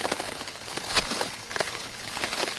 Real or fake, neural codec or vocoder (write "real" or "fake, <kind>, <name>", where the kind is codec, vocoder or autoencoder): fake, codec, HILCodec